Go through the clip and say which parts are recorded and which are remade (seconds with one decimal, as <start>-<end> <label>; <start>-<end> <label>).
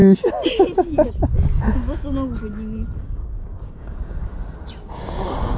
0.0-3.0 recorded; 3.0-4.3 remade; 4.3-5.6 recorded